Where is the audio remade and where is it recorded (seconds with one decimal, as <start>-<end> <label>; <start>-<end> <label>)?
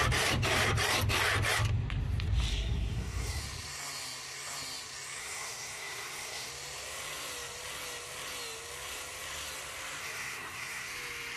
0.0-2.5 recorded; 2.5-3.4 remade; 3.4-5.2 recorded; 5.2-6.5 remade; 6.5-10.0 recorded; 10.0-10.9 remade; 10.9-11.4 recorded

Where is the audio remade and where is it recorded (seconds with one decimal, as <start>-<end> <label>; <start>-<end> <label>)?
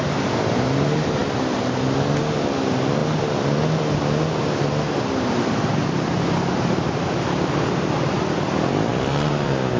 0.0-1.2 recorded; 1.2-2.2 remade; 2.2-9.8 recorded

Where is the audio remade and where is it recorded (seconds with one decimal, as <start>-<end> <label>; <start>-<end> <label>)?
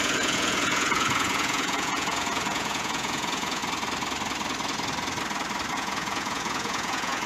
0.0-3.6 remade; 3.6-5.7 recorded; 5.7-7.3 remade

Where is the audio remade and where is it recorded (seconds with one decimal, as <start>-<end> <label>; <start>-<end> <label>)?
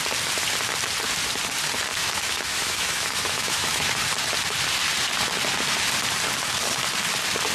0.0-2.0 recorded; 2.0-4.0 remade; 4.0-7.5 recorded